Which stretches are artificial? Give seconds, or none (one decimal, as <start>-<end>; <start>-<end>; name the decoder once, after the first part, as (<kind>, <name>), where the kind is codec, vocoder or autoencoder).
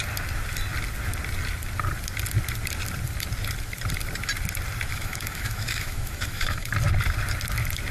4.9-6.7 (autoencoder, DAC-VAE)